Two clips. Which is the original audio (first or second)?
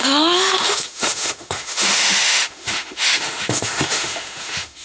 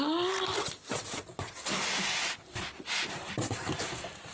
second